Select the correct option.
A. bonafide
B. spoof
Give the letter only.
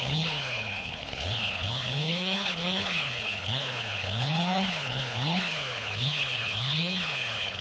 B